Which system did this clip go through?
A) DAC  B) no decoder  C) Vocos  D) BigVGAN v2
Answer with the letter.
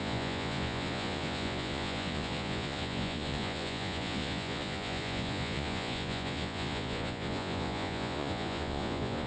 C